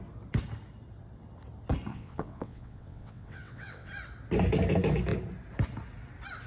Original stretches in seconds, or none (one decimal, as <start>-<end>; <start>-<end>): 0.0-1.9; 3.9-6.5